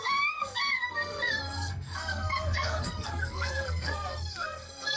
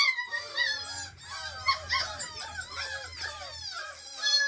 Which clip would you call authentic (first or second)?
second